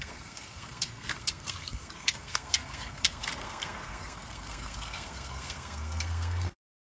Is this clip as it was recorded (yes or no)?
no